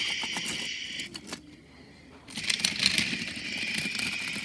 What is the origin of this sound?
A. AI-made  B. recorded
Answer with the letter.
B